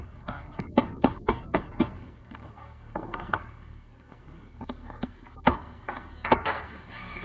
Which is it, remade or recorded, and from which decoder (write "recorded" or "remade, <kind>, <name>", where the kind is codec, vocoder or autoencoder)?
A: remade, codec, SNAC